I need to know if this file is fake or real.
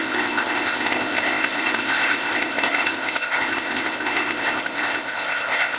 fake